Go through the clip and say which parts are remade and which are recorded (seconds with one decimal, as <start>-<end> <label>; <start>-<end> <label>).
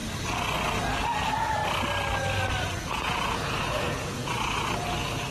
0.0-1.0 recorded; 1.0-1.6 remade; 1.6-2.6 recorded; 2.6-5.3 remade